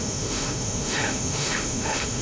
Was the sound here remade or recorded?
remade